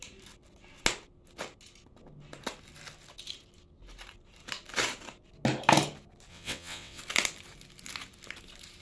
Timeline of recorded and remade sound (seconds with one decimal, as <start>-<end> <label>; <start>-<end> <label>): 0.0-6.3 recorded; 6.3-7.0 remade; 7.0-8.8 recorded